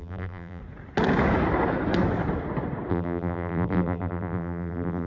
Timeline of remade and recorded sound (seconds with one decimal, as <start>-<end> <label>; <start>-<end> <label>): 0.0-0.6 remade; 0.6-2.9 recorded; 2.9-5.1 remade